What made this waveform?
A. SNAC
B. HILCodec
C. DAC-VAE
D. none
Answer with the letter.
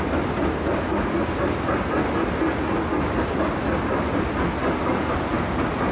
D